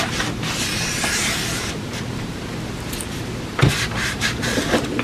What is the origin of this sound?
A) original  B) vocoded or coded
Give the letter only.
B